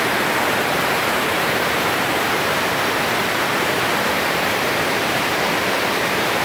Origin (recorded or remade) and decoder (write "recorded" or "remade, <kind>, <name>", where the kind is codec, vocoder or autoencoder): remade, vocoder, BigVGAN v2